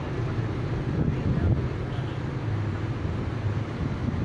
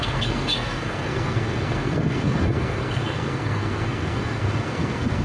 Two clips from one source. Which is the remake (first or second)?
second